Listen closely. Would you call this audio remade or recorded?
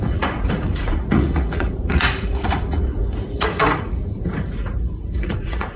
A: remade